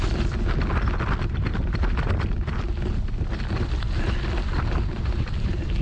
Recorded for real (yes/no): yes